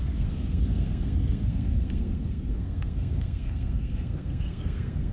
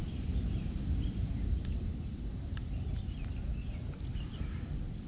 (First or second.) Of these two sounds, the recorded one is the second